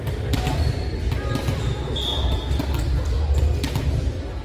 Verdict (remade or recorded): recorded